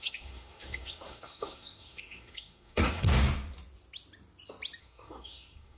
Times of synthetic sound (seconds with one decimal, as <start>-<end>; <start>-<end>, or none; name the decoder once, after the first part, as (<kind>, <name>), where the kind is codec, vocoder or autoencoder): 0.0-3.1 (codec, SNAC); 4.8-5.8